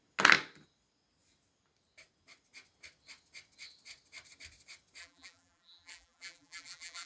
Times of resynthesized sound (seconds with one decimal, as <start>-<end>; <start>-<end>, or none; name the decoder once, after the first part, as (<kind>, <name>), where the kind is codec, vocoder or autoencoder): 5.0-7.1 (vocoder, BigVGAN v2)